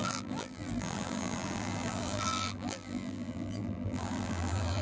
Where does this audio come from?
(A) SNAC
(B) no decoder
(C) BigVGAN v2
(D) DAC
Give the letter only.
C